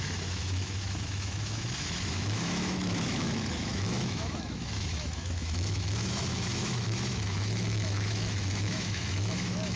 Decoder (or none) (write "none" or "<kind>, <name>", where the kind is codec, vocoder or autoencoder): autoencoder, DAC-VAE